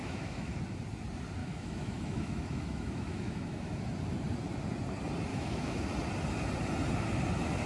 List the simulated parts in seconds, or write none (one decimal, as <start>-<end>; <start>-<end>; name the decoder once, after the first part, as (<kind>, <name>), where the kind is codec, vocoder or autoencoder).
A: 0.0-0.6 (autoencoder, DAC-VAE); 1.4-3.8; 5.3-5.9